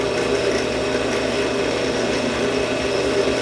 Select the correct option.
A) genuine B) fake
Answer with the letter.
A